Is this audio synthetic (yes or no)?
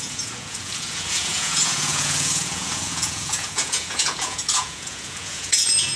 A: yes